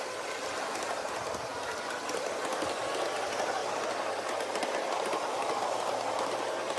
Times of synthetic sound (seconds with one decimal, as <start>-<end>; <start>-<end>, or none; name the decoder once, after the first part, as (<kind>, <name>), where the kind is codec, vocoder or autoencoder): none